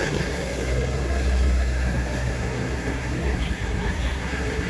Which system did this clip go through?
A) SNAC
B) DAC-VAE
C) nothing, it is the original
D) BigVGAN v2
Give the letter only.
A